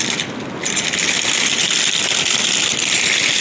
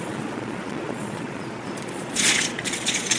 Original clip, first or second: first